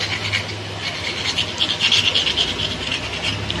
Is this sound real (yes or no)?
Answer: yes